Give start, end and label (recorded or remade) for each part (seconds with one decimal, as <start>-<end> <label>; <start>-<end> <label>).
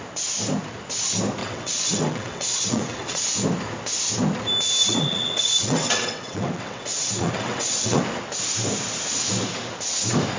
0.0-1.4 recorded; 1.4-3.3 remade; 3.3-4.8 recorded; 4.8-8.0 remade; 8.0-10.4 recorded